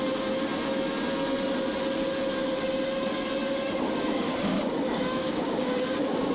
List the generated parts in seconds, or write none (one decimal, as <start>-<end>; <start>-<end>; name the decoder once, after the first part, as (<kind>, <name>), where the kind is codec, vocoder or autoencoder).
3.4-6.3 (codec, DAC)